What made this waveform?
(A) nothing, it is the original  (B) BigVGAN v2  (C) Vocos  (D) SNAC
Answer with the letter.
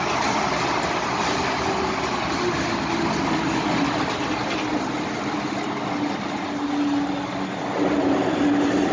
A